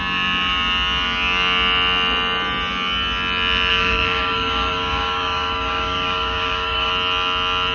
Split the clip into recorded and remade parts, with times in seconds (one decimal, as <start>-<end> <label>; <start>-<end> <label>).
0.0-3.7 recorded; 3.7-6.9 remade; 6.9-7.7 recorded